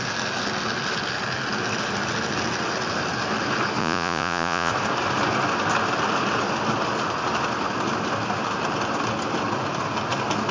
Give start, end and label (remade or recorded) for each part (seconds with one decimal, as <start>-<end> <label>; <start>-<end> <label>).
0.0-3.8 recorded; 3.8-4.7 remade; 4.7-10.5 recorded